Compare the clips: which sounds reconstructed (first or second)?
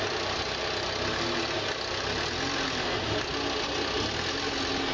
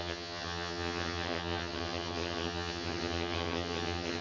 second